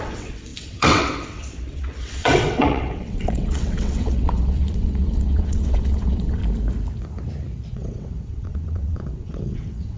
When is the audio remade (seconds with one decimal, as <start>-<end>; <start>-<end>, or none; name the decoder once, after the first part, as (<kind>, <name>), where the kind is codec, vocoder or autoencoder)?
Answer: 0.0-6.4 (vocoder, WaveNeXt); 7.7-10.0